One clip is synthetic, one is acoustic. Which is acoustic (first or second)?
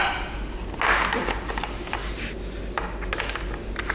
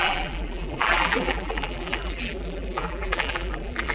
first